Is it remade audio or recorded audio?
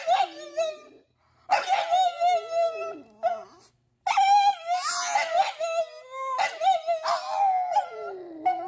recorded